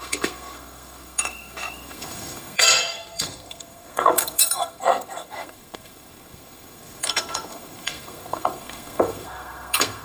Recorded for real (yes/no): no